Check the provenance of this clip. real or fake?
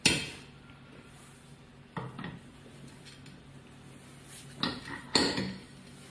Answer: real